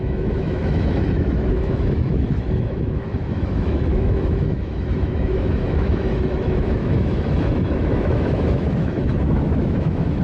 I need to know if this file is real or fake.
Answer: fake